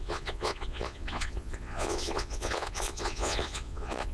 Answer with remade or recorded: remade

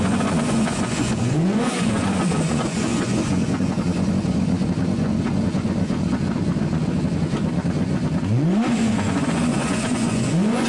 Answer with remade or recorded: remade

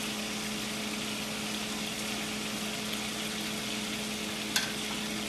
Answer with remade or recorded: recorded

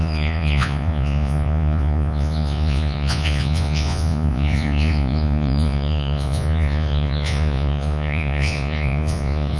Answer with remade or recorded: remade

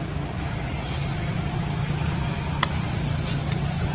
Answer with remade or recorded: recorded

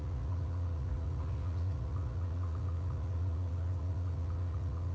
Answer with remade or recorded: remade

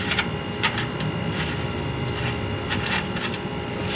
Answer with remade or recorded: recorded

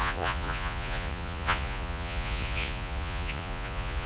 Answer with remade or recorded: remade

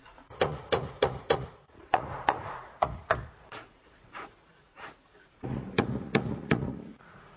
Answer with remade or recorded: remade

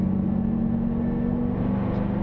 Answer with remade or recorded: recorded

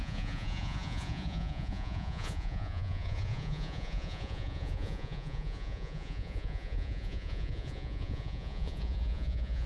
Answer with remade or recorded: remade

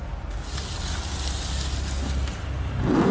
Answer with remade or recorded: recorded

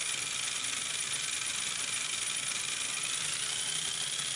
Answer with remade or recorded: recorded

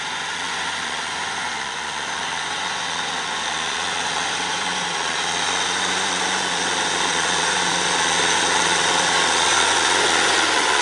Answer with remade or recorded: remade